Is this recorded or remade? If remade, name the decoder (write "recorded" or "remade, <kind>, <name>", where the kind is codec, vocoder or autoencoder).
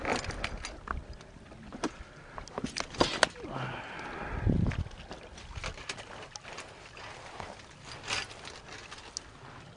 recorded